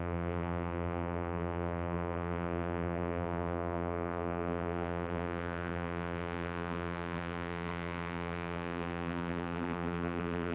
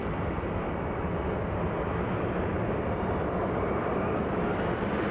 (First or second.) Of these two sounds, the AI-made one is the first